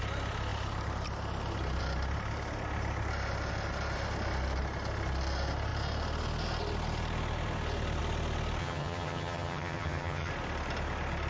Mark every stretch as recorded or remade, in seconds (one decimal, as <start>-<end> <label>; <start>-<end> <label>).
0.0-8.6 recorded; 8.6-10.3 remade; 10.3-11.3 recorded